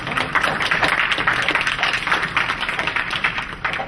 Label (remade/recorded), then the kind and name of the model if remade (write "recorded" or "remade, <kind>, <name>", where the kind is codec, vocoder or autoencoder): remade, vocoder, BigVGAN v2